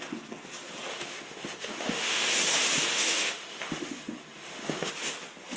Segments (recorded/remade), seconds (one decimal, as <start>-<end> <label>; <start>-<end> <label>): 0.0-0.9 recorded; 0.9-2.3 remade; 2.3-2.9 recorded; 2.9-4.9 remade; 4.9-5.6 recorded